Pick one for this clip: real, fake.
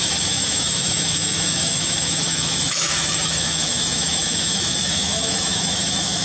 fake